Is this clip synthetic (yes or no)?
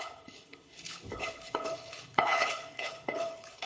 yes